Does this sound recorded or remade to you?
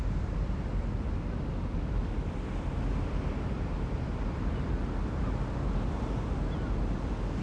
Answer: recorded